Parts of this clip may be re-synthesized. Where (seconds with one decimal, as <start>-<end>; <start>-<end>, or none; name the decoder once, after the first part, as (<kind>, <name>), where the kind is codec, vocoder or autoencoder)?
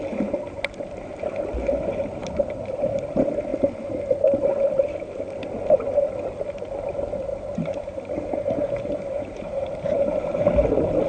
2.2-3.0 (vocoder, BigVGAN v2); 7.3-10.4